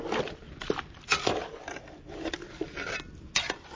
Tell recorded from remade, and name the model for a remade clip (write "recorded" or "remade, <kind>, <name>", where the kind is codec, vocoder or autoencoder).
recorded